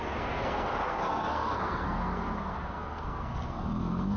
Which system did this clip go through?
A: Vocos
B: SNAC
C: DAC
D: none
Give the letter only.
B